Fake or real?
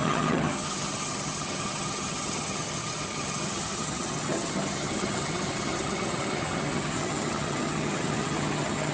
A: fake